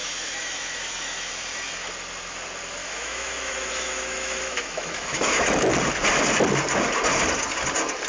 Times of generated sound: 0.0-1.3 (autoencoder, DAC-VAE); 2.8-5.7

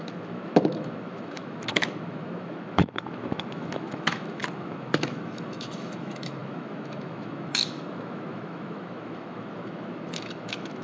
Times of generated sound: 0.0-10.8 (autoencoder, DAC-VAE)

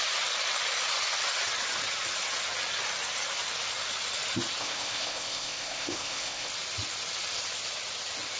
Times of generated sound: 4.6-6.5 (codec, ZipCodec)

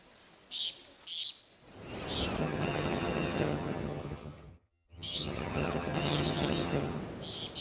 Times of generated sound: 2.4-7.0 (vocoder, HiFi-GAN)

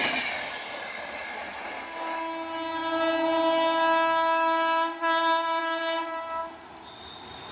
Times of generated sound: none

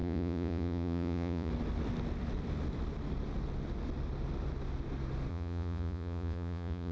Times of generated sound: 0.0-1.5 (vocoder, Vocos); 5.3-6.9

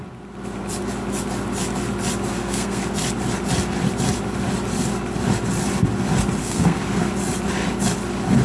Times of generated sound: 2.3-2.8 (codec, SNAC); 6.4-7.1

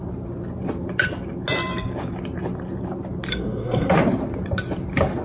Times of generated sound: 3.3-3.9 (codec, SNAC)